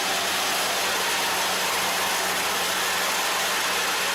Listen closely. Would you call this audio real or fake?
real